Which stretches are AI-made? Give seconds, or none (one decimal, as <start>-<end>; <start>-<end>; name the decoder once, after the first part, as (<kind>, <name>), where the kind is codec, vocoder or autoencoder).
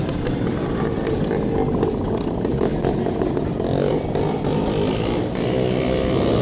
none